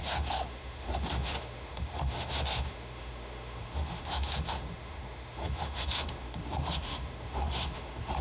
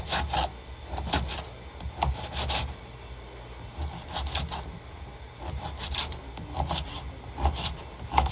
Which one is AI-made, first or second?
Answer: first